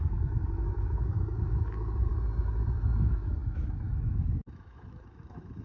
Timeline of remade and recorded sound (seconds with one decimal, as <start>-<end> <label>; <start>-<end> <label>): 0.0-2.1 remade; 2.1-2.7 recorded; 2.7-5.6 remade